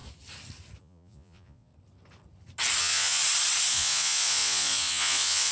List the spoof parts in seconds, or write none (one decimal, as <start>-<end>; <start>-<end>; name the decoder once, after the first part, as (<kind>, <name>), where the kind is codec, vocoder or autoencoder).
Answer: 0.8-1.7 (vocoder, Vocos); 2.8-3.2; 3.7-5.5